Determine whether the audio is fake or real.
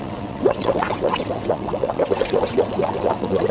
fake